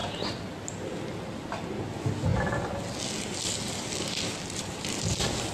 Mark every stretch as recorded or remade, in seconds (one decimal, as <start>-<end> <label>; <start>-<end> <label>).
0.0-1.0 remade; 1.0-2.3 recorded; 2.3-5.1 remade; 5.1-5.5 recorded